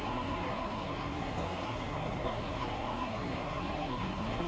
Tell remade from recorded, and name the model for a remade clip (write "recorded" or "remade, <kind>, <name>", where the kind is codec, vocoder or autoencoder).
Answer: remade, codec, SNAC